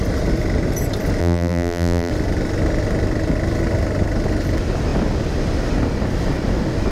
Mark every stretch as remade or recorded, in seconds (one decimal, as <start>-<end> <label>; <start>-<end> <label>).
0.0-1.2 recorded; 1.2-2.1 remade; 2.1-6.9 recorded